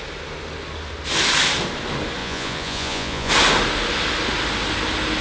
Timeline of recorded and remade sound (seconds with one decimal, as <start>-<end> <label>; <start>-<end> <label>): 0.0-2.2 recorded; 2.2-3.3 remade; 3.3-5.2 recorded

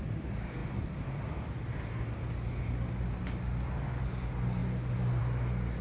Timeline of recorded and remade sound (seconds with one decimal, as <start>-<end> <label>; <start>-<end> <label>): 0.0-5.8 recorded

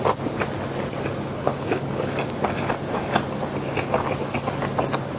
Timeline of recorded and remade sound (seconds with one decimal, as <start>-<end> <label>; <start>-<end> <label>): 0.0-1.3 recorded; 1.3-2.1 remade; 2.1-5.2 recorded

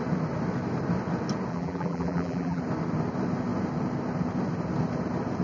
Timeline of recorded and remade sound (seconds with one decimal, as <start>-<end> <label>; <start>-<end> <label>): 0.0-1.5 recorded; 1.5-2.6 remade; 2.6-5.4 recorded

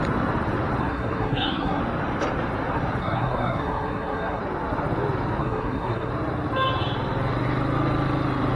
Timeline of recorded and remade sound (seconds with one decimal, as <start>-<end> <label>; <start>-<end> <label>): 0.0-0.8 recorded; 0.8-1.8 remade; 1.8-3.0 recorded; 3.0-4.4 remade; 4.4-5.4 recorded; 5.4-6.1 remade; 6.1-8.6 recorded

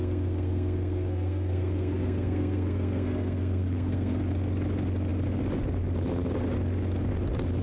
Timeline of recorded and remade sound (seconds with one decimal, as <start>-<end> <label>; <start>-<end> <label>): 0.0-4.3 remade; 4.3-7.6 recorded